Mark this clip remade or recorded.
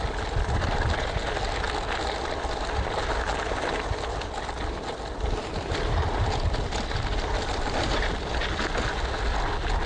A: recorded